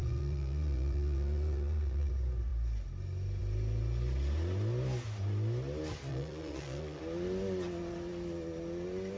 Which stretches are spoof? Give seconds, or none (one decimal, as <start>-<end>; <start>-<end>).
0.0-2.1; 6.1-7.0